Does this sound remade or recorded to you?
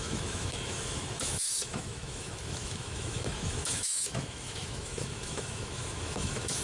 remade